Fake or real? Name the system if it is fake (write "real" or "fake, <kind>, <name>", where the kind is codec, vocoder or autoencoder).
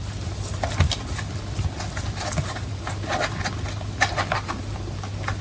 real